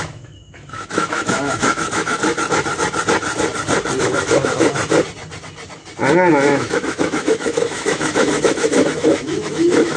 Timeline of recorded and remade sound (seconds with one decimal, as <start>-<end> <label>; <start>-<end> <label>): 0.0-2.2 remade; 2.2-4.0 recorded; 4.0-4.8 remade; 4.8-6.3 recorded; 6.3-10.0 remade